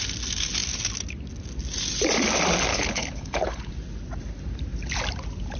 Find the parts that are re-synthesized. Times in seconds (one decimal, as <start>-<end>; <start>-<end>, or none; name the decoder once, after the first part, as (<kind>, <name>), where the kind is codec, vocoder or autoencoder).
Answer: 2.7-3.7 (codec, HILCodec)